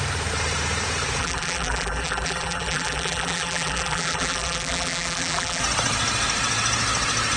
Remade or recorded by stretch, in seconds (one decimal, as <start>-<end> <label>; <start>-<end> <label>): 0.0-1.2 recorded; 1.2-5.6 remade; 5.6-7.4 recorded